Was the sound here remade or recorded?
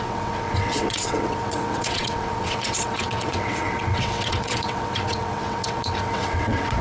remade